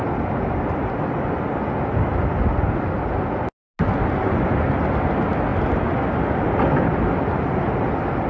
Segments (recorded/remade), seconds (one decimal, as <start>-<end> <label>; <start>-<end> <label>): 0.0-8.3 recorded